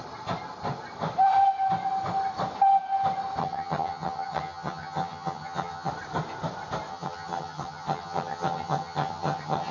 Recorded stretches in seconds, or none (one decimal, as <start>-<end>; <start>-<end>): 0.0-3.4; 5.9-6.9